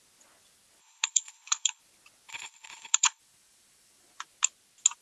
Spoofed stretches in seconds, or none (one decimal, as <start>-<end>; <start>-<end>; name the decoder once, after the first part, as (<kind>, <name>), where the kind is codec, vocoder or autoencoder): 0.8-1.8 (codec, HILCodec); 2.3-3.2